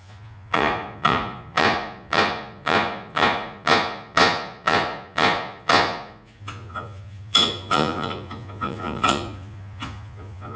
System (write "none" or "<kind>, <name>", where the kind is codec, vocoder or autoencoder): vocoder, Vocos